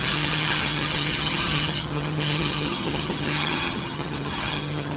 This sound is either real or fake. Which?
fake